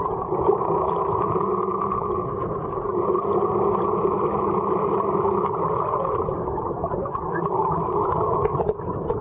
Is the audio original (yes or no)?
yes